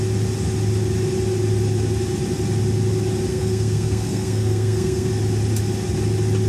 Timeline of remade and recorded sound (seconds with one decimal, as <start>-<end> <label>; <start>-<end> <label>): 0.0-3.3 recorded; 3.3-5.1 remade; 5.1-6.5 recorded